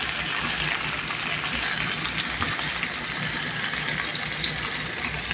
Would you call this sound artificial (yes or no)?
no